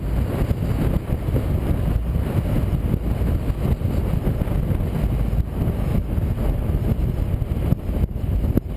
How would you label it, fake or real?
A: real